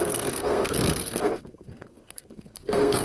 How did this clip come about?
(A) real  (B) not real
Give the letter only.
B